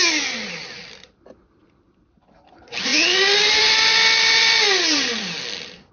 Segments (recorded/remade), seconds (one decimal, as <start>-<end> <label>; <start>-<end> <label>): 0.0-5.9 recorded